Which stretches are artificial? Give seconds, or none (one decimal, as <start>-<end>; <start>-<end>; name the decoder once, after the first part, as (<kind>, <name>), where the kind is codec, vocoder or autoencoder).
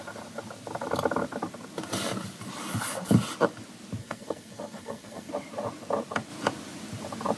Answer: 4.0-5.3 (codec, SNAC)